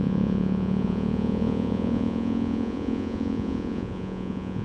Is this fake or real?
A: fake